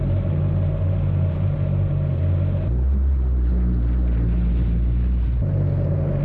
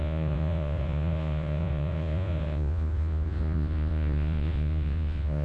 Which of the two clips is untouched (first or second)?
first